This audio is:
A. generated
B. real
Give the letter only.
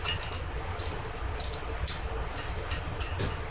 B